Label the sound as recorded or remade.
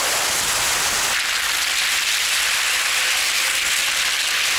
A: recorded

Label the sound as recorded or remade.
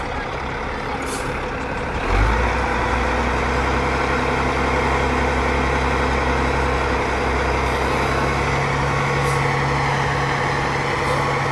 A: recorded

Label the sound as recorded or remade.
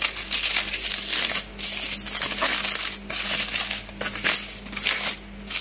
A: recorded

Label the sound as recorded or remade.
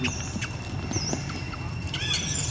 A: recorded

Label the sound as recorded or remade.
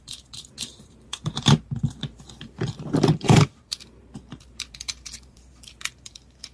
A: remade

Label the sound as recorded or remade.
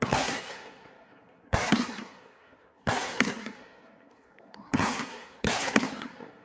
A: remade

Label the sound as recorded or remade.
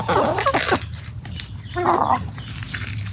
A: recorded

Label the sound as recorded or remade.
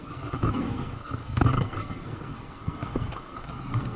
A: remade